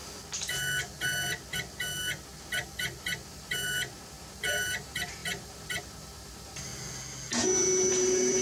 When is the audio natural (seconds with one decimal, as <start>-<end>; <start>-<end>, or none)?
0.0-3.3; 6.7-7.9